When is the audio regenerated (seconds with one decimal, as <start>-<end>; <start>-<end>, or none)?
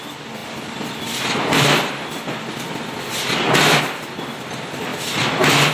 none